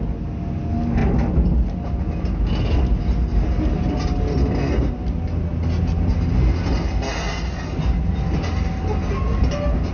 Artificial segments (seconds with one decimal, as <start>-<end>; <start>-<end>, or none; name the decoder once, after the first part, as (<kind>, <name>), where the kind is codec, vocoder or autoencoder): none